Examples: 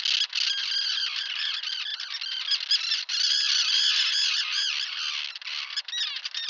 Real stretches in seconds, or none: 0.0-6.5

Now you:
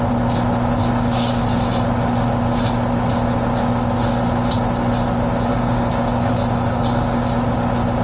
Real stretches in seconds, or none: 0.0-0.8; 1.4-5.5; 7.2-8.0

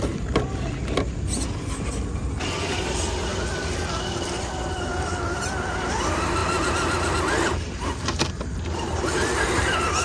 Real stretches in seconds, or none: 0.0-10.0

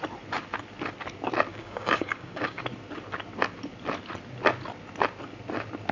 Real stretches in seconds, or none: 0.0-1.5; 2.6-5.9